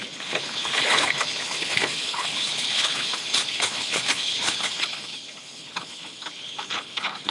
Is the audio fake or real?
fake